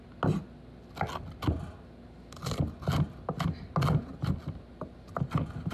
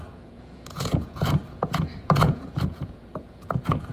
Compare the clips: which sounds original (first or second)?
first